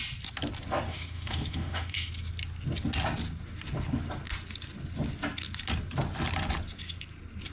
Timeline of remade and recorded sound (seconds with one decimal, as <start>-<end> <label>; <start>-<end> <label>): 0.0-0.9 recorded; 0.9-2.1 remade; 2.1-7.5 recorded